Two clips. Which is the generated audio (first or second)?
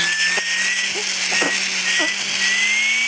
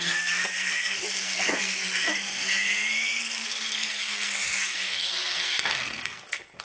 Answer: second